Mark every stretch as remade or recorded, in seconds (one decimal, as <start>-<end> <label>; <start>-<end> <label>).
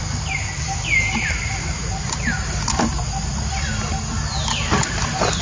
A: 0.0-1.8 remade; 1.8-2.9 recorded; 2.9-3.7 remade; 3.7-5.4 recorded